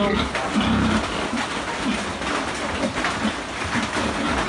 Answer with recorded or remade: recorded